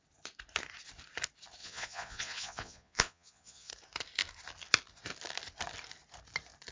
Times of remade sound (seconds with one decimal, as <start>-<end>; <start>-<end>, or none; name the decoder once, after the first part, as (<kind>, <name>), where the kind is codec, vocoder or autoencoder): 1.6-3.7 (vocoder, Vocos)